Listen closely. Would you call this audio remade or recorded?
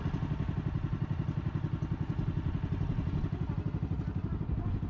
recorded